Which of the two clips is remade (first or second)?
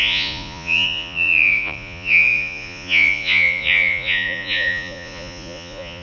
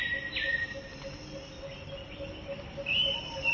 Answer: first